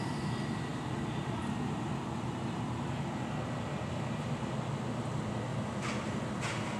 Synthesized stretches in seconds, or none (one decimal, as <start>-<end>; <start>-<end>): 5.5-6.3